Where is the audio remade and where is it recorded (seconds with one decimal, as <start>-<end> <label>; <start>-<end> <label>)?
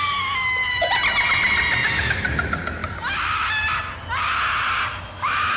0.0-0.6 remade; 0.6-2.0 recorded; 2.0-2.8 remade; 2.8-4.9 recorded; 4.9-5.6 remade